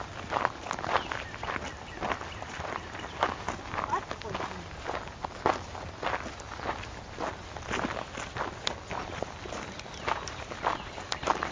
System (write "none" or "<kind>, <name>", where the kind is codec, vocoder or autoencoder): none